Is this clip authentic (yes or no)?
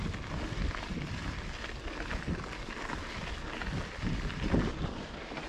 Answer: yes